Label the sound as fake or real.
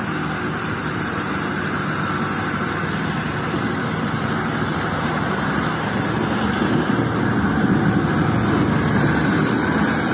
real